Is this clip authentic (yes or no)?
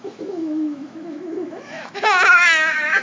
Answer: no